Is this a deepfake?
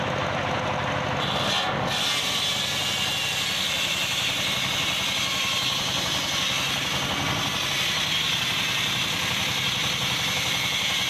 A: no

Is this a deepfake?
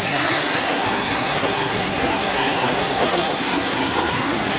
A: yes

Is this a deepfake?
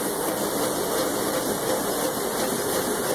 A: no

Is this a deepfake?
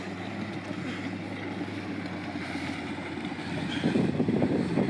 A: no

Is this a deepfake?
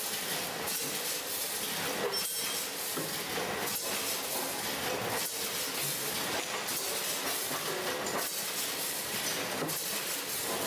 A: no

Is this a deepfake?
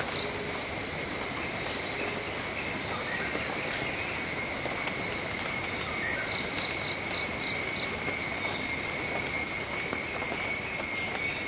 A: no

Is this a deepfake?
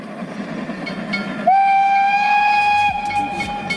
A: no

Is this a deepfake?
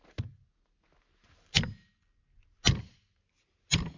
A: no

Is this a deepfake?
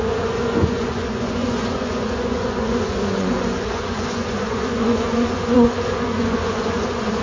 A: yes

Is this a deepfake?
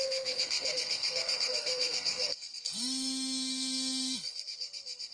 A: yes